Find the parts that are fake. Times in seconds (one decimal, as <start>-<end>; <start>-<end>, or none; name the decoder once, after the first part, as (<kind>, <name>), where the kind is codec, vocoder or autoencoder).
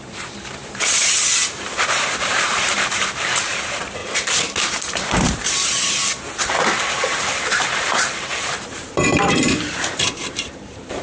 0.0-4.0 (vocoder, BigVGAN v2); 4.7-6.0; 7.0-11.0